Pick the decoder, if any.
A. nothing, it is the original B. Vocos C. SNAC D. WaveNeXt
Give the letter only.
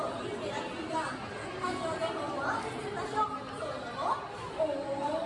A